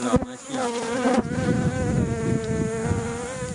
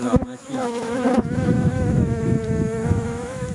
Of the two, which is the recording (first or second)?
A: first